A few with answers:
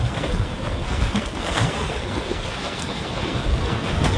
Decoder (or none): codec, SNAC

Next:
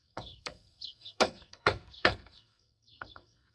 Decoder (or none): codec, SNAC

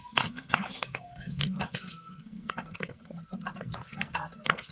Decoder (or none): codec, SNAC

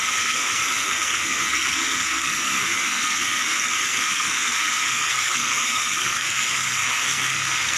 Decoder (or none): codec, SNAC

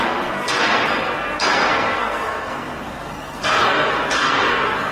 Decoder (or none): codec, SNAC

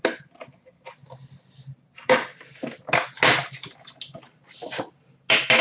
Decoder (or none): none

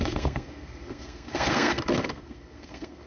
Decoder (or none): codec, SNAC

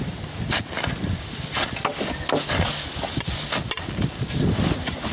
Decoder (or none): none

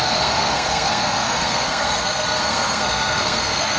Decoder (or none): codec, SNAC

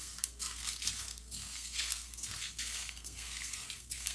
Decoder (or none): codec, SNAC